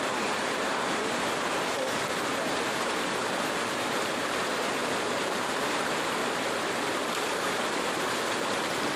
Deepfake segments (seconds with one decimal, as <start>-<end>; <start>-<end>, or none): 0.0-6.2; 8.3-9.0